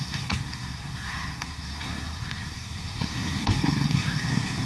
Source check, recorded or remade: remade